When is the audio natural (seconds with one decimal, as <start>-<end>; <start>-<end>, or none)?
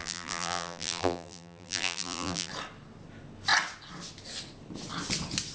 2.5-5.5